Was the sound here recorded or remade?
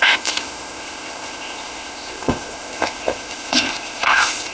remade